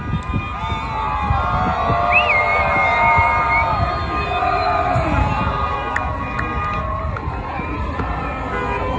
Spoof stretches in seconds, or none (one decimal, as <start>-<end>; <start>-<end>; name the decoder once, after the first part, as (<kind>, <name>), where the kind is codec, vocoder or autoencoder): none